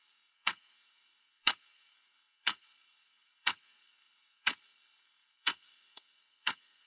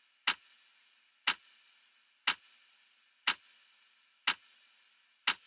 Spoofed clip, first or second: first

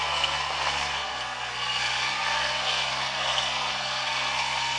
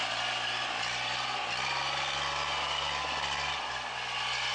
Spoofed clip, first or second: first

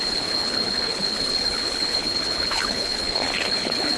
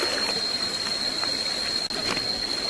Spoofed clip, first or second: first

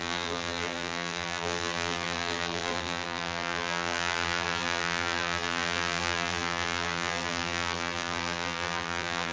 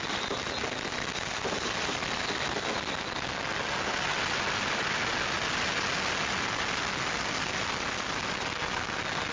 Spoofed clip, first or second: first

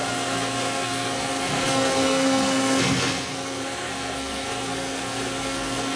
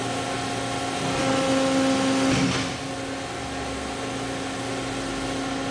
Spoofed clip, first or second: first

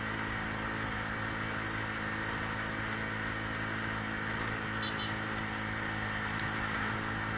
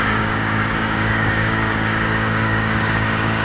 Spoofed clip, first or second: second